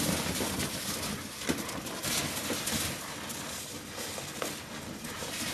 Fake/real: real